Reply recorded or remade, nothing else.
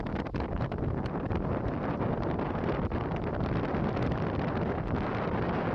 recorded